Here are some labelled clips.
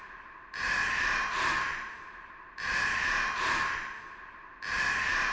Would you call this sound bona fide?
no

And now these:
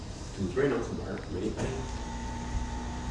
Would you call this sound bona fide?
no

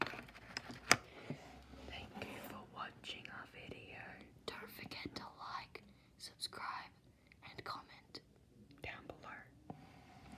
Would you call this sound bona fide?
yes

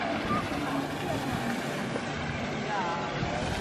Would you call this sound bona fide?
yes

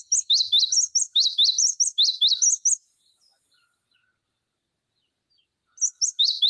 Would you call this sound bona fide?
yes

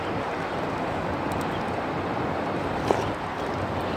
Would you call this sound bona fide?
yes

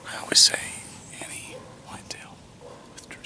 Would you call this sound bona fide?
yes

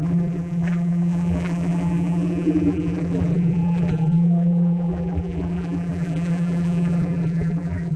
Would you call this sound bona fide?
no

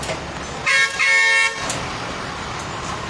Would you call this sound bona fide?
yes